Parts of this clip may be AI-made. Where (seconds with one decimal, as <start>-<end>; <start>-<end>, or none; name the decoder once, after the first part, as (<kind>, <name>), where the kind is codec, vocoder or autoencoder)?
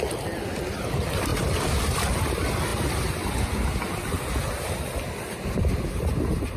none